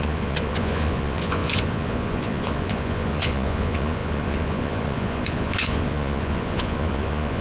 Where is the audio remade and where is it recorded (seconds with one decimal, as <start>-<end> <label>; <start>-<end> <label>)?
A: 0.0-7.4 remade

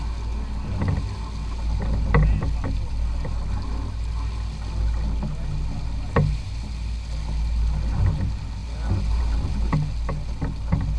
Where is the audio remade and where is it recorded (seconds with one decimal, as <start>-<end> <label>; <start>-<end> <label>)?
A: 0.0-11.0 recorded

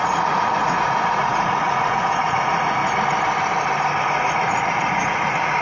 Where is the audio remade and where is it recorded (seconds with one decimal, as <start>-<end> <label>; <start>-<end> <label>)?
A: 0.0-2.8 remade; 2.8-4.0 recorded; 4.0-5.6 remade

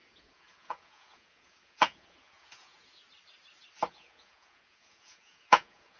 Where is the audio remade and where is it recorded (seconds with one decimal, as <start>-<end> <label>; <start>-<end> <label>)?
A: 0.0-3.0 remade; 3.0-3.9 recorded; 3.9-6.0 remade